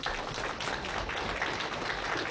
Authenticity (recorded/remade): recorded